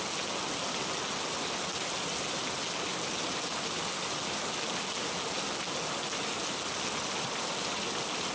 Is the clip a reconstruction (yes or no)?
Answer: no